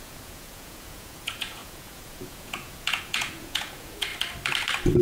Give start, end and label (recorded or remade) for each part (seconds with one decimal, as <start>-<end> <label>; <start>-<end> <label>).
0.0-4.1 remade; 4.1-5.0 recorded